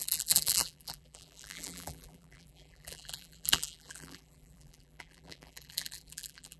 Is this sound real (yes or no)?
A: no